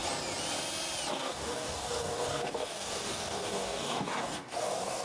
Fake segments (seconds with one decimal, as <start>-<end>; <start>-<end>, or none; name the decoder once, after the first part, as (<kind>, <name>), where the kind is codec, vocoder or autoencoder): 1.1-5.0 (codec, DAC)